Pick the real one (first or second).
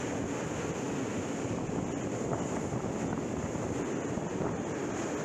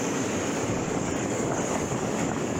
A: first